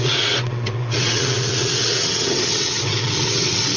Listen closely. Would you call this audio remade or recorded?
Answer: remade